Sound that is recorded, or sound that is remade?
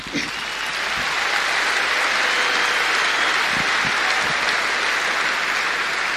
recorded